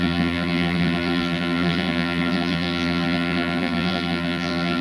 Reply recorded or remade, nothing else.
remade